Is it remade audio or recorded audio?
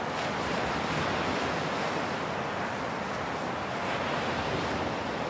recorded